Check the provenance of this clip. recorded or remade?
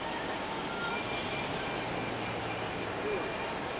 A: recorded